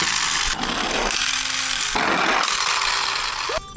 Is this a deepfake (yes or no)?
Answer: no